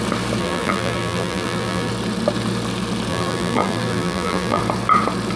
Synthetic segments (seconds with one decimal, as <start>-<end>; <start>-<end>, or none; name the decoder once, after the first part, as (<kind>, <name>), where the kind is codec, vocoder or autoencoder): 0.4-1.9 (vocoder, BigVGAN v2); 3.1-4.6